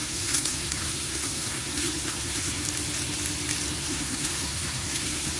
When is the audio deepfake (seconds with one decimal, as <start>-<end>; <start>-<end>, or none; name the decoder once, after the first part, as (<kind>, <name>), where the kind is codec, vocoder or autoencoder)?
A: 0.0-2.6 (codec, SNAC); 3.8-5.4